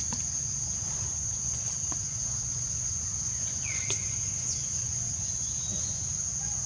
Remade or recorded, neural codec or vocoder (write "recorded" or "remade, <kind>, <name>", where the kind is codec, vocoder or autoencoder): remade, vocoder, Vocos